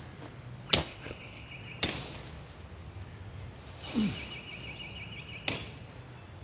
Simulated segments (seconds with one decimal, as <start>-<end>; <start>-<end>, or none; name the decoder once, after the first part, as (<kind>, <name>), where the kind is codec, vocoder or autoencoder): 0.8-1.5 (codec, HILCodec)